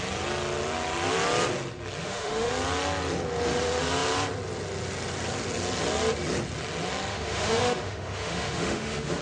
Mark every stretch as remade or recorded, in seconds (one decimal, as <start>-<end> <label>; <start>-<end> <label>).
0.0-2.0 recorded; 2.0-2.5 remade; 2.5-7.1 recorded; 7.1-9.2 remade